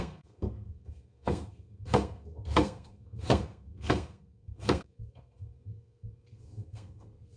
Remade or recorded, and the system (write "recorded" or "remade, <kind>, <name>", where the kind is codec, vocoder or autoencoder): remade, codec, SNAC